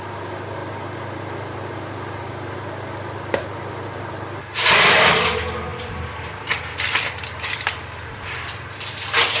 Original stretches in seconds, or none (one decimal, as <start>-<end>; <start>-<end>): none